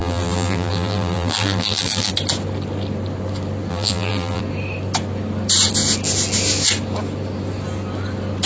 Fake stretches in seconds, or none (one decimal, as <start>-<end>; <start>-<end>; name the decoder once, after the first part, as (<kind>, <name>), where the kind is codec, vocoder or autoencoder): 0.0-2.1 (vocoder, BigVGAN v2); 3.7-4.4